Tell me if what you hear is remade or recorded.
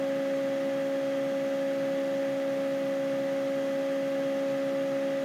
recorded